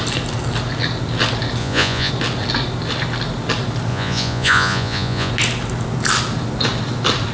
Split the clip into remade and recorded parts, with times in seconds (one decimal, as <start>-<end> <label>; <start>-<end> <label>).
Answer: 0.0-1.6 recorded; 1.6-2.1 remade; 2.1-3.9 recorded; 3.9-5.3 remade; 5.3-7.3 recorded